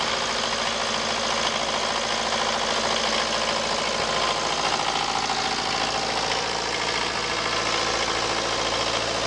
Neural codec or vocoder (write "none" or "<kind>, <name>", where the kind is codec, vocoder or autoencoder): none